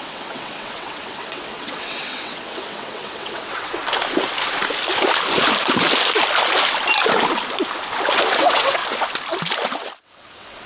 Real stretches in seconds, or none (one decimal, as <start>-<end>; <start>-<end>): 3.8-8.4; 8.8-10.0